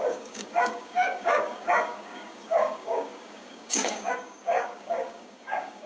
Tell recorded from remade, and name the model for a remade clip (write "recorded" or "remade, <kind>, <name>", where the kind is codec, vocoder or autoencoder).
remade, codec, DAC